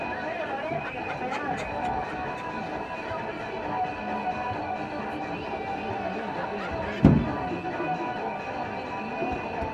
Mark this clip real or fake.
real